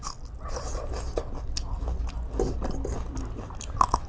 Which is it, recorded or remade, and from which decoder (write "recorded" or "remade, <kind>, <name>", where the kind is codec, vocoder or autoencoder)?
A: recorded